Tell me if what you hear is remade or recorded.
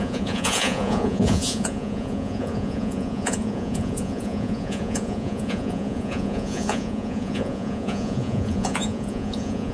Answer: remade